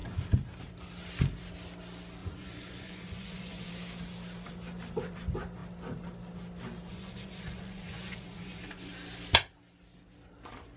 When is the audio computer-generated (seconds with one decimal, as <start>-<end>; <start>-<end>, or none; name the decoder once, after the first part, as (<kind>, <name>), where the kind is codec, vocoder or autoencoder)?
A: 2.2-3.7 (vocoder, Vocos); 6.9-8.9